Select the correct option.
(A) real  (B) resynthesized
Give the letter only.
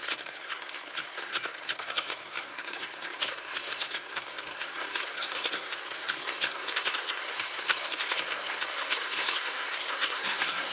B